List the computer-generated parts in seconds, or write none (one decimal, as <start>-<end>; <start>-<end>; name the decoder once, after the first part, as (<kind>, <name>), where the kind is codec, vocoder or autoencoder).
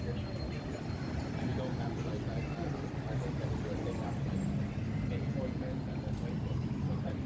5.1-5.8 (vocoder, Vocos)